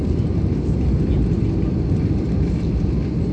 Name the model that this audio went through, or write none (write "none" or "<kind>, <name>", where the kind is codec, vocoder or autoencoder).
none